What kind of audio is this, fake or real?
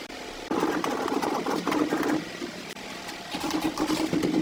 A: fake